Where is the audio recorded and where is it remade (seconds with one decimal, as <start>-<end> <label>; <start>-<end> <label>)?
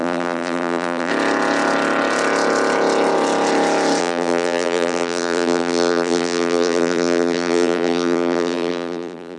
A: 0.0-1.1 remade; 1.1-4.0 recorded; 4.0-9.4 remade